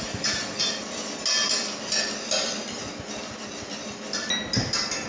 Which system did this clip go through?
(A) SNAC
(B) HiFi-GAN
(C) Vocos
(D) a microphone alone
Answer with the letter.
D